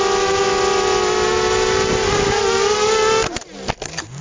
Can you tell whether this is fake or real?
real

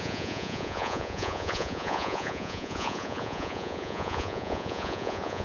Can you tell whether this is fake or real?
fake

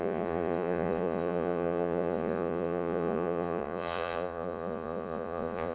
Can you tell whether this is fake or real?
fake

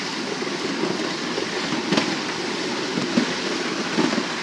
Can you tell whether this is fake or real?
real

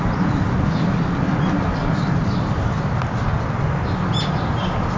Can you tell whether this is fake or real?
real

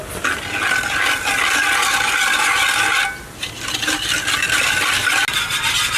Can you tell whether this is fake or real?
real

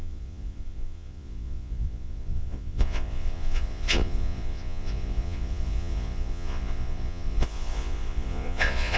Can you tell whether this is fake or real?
fake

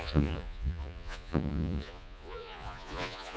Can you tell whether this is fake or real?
fake